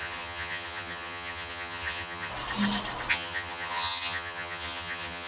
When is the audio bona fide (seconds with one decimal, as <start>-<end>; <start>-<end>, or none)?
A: 2.3-3.1